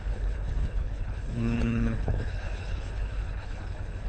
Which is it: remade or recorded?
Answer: remade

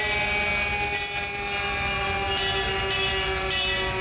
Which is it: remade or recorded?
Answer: recorded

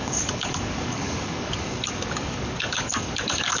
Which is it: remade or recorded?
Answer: remade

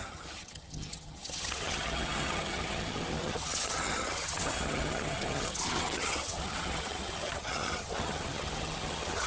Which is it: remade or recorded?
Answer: remade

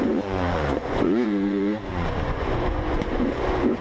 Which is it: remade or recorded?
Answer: remade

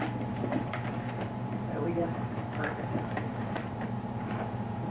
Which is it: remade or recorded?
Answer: remade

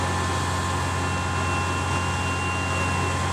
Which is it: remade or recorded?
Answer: recorded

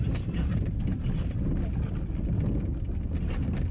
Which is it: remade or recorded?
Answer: recorded